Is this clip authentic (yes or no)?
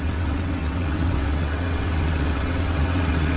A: no